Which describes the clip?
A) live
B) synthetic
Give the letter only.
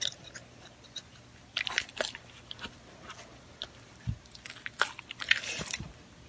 A